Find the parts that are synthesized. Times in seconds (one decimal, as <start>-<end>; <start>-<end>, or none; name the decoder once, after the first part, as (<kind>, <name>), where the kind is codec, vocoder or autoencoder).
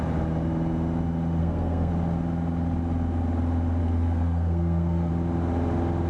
1.4-1.9 (codec, SNAC); 3.8-5.1